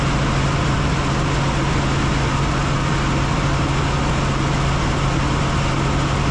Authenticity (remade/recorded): recorded